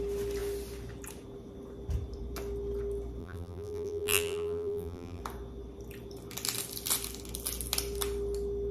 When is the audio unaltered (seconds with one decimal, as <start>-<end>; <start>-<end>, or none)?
0.0-3.2; 5.2-8.7